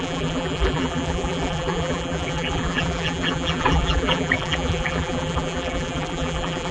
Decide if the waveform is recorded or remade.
remade